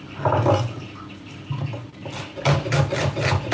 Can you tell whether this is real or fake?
real